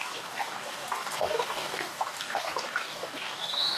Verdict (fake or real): fake